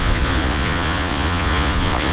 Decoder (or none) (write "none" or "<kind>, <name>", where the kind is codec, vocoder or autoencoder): vocoder, Vocos